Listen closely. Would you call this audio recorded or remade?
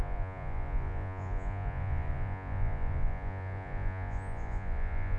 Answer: remade